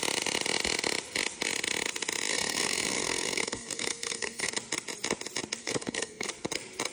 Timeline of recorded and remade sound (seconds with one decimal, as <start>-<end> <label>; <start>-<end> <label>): 0.0-2.3 recorded; 2.3-4.5 remade; 4.5-5.6 recorded; 5.6-6.3 remade; 6.3-6.9 recorded